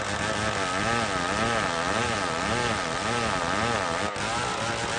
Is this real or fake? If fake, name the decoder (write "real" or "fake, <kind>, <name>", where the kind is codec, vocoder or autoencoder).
real